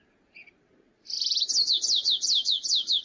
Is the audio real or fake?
fake